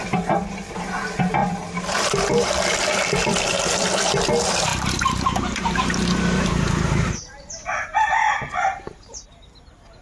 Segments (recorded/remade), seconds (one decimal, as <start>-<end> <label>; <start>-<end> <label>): 0.0-1.4 recorded; 1.4-2.5 remade; 2.5-4.7 recorded; 4.7-9.2 remade; 9.2-10.0 recorded